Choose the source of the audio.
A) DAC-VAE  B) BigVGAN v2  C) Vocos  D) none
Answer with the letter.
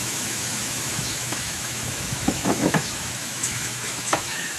A